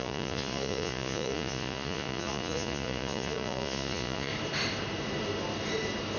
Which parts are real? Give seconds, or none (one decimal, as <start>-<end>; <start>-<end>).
4.3-6.2